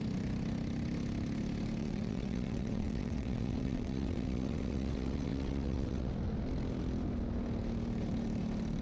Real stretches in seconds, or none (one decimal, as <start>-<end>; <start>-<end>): 0.0-1.8; 6.1-8.8